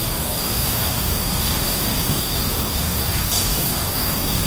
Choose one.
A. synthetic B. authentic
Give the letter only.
A